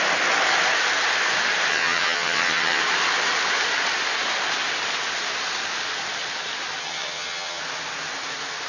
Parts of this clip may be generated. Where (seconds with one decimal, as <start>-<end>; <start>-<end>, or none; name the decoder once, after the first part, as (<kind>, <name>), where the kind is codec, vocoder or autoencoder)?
1.7-2.8 (vocoder, HiFi-GAN); 6.8-7.6